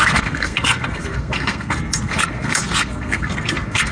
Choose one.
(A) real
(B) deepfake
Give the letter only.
B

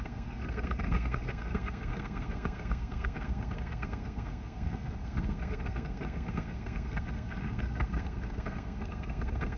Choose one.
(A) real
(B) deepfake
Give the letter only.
B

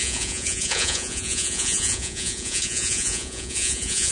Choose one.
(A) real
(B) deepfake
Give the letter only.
B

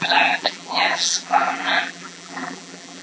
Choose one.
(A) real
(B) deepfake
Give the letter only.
B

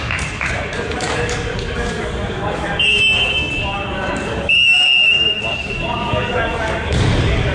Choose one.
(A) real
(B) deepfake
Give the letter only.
B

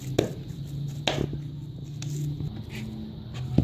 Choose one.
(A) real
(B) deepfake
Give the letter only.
A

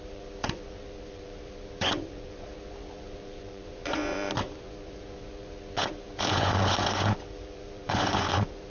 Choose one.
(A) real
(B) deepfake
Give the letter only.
B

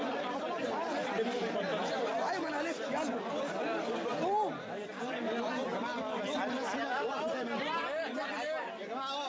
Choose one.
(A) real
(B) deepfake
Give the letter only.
A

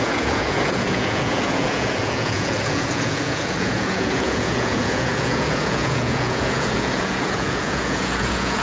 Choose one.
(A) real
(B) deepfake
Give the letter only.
B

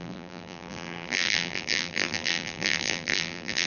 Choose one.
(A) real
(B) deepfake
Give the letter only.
B